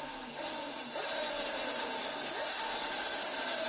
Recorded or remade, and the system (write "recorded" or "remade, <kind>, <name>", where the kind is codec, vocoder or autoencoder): recorded